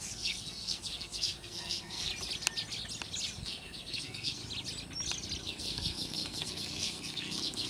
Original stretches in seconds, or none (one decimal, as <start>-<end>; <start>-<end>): 2.1-3.4; 4.4-5.4